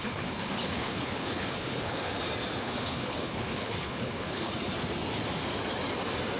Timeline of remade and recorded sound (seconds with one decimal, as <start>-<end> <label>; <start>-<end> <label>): 0.0-2.1 remade; 2.1-2.6 recorded; 2.6-4.5 remade; 4.5-6.4 recorded